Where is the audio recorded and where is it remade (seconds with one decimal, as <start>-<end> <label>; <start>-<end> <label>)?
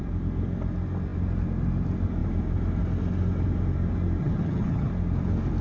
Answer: 0.0-4.2 recorded; 4.2-4.9 remade; 4.9-5.6 recorded